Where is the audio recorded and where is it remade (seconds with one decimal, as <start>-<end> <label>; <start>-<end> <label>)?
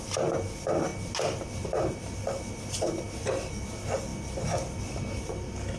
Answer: 0.0-5.8 recorded